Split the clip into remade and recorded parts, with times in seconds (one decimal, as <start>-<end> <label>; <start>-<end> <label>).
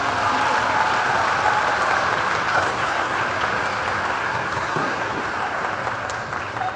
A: 0.0-2.5 recorded; 2.5-3.2 remade; 3.2-4.2 recorded; 4.2-5.2 remade; 5.2-6.8 recorded